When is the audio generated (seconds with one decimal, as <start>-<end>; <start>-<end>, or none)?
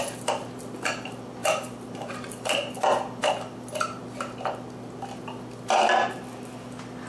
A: 1.4-2.1